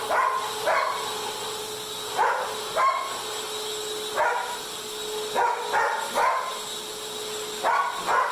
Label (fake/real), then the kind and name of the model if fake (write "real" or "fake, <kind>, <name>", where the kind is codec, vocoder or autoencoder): real